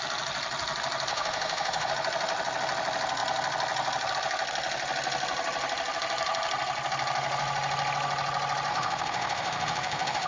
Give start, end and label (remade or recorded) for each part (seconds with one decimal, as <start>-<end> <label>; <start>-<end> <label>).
0.0-1.1 recorded; 1.1-1.9 remade; 1.9-8.7 recorded; 8.7-10.3 remade